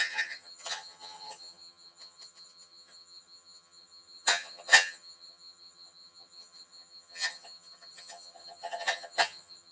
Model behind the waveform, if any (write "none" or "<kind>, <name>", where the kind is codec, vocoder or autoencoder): vocoder, HiFi-GAN